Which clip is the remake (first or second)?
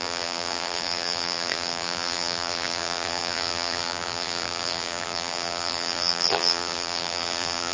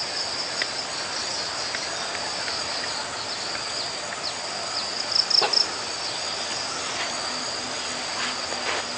first